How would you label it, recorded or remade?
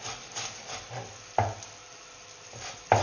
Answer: recorded